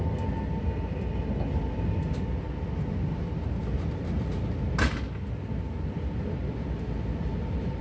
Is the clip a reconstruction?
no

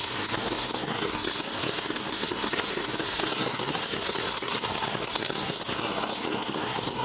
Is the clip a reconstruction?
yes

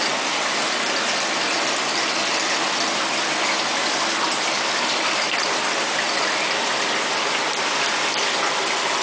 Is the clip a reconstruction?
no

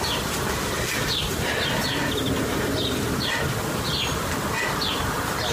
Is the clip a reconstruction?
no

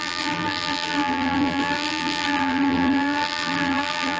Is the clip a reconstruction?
yes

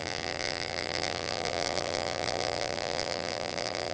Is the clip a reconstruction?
yes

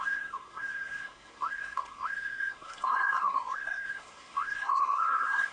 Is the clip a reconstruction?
yes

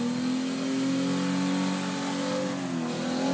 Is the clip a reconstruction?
no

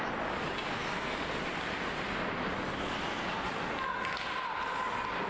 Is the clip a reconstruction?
no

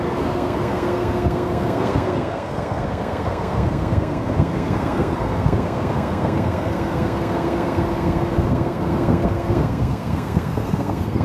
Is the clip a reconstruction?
yes